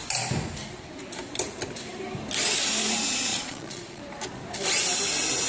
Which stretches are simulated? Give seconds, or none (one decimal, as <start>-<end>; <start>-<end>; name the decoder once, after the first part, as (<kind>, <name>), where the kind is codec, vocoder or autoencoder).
3.3-4.0 (vocoder, Vocos)